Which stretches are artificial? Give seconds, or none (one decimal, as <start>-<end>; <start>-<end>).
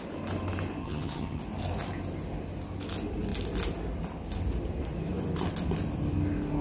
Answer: 0.8-1.4